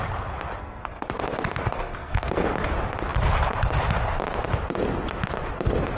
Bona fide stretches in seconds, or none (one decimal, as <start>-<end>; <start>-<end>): 0.0-0.6; 1.2-1.6; 2.7-6.0

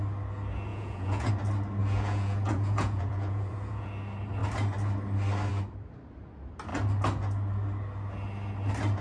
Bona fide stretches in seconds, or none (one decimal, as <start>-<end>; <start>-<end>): 0.0-0.7; 1.3-1.8; 3.9-9.0

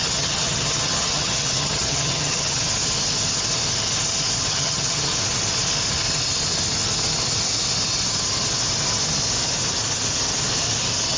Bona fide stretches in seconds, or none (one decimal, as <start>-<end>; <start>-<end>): 2.6-4.5; 5.1-11.2

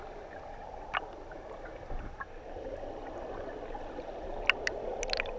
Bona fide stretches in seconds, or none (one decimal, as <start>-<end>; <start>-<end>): 0.0-5.4

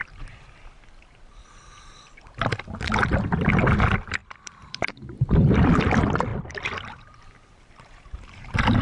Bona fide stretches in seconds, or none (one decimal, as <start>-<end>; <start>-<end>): 3.5-4.2; 5.7-6.3; 7.2-8.8